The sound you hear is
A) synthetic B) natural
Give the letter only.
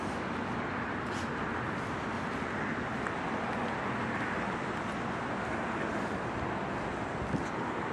B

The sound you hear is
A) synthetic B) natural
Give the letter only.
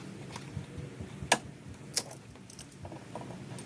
B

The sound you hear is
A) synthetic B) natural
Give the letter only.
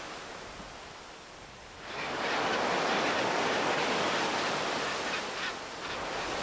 B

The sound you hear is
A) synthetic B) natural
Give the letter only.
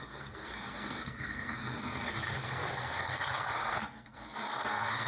A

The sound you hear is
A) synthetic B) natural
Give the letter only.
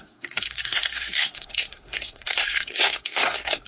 A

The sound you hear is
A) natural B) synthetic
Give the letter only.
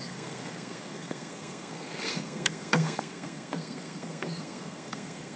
B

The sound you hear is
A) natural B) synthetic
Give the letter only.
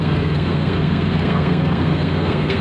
B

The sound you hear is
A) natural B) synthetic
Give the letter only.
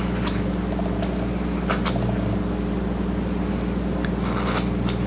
A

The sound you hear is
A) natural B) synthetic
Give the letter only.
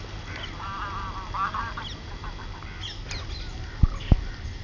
A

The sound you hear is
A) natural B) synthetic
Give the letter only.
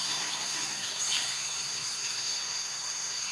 B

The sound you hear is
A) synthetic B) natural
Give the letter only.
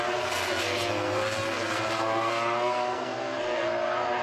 A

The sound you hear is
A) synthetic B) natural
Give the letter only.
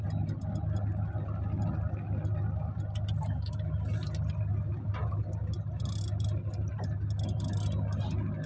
B